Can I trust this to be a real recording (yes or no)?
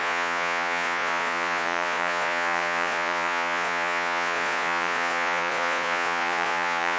no